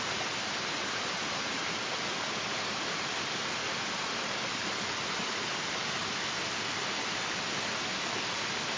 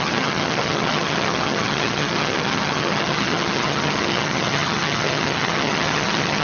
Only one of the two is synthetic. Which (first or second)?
second